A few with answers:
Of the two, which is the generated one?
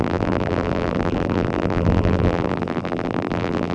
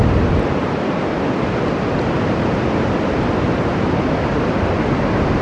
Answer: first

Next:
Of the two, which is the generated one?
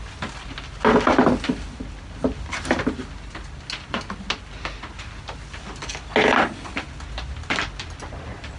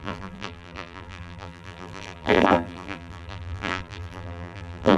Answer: second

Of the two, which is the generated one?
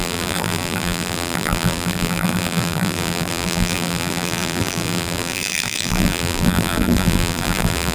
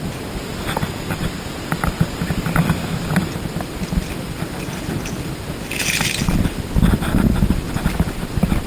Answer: first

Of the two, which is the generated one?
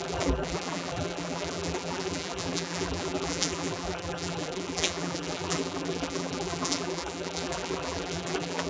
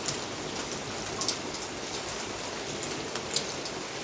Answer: first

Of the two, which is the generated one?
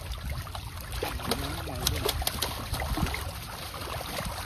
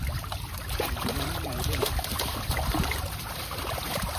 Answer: second